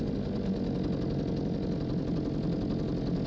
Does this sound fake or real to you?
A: real